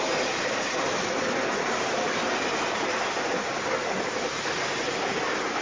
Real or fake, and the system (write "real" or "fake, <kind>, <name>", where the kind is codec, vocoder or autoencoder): real